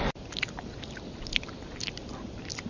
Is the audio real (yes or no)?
yes